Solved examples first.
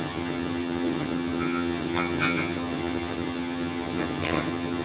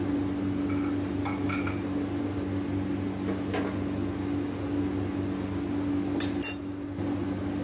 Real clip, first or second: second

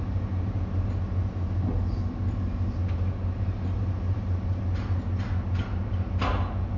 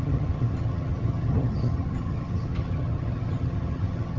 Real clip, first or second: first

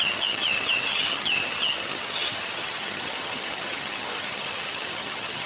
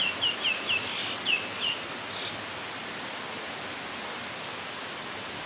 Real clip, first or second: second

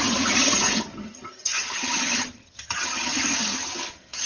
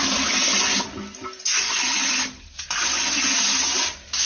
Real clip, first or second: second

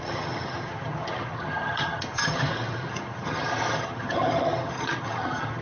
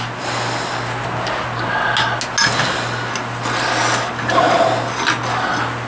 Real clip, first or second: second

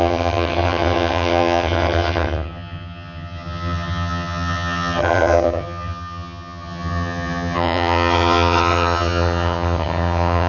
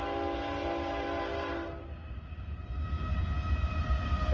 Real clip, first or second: second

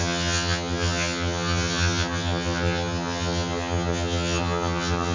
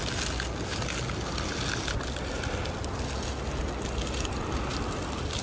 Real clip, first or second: second